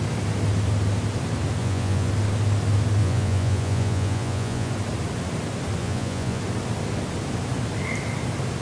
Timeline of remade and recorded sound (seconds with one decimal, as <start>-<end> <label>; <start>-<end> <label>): 0.0-1.6 recorded; 1.6-2.1 remade; 2.1-3.0 recorded; 3.0-4.7 remade; 4.7-5.8 recorded; 5.8-6.4 remade; 6.4-8.6 recorded